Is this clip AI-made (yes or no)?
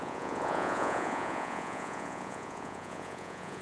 yes